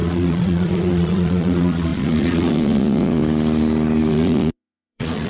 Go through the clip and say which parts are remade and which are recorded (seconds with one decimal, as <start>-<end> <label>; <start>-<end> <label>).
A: 0.0-3.2 remade; 3.2-4.1 recorded; 4.1-5.3 remade